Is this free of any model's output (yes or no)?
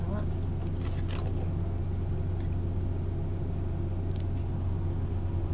yes